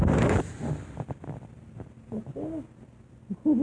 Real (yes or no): yes